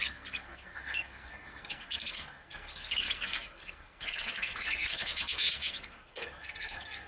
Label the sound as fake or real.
fake